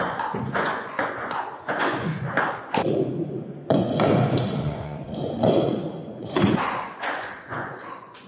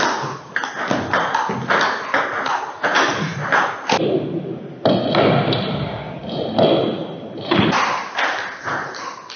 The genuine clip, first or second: second